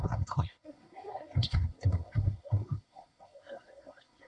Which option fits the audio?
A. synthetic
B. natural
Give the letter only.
A